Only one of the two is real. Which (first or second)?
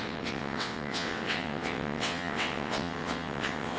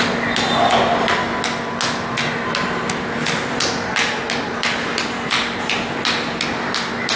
second